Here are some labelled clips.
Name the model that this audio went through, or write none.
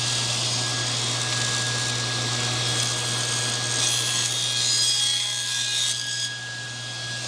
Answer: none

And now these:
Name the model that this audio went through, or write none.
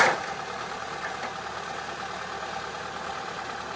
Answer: none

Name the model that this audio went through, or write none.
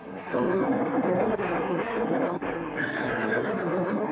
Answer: codec, SNAC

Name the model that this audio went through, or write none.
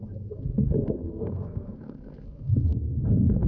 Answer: codec, SNAC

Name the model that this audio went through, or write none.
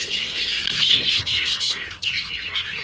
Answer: codec, SNAC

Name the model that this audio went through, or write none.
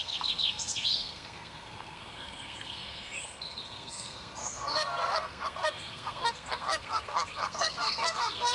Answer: codec, SNAC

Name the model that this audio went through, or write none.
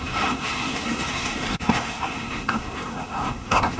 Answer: codec, SNAC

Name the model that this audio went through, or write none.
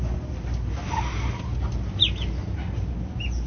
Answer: none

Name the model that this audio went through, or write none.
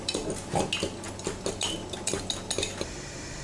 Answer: none